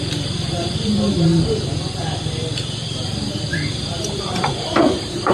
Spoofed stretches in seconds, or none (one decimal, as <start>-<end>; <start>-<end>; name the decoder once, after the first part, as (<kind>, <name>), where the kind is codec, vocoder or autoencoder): 0.0-5.3 (vocoder, BigVGAN v2)